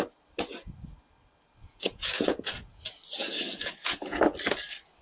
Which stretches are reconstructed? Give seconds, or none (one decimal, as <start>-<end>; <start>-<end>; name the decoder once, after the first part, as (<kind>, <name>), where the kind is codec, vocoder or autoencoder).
1.6-2.8 (vocoder, Vocos); 3.2-4.2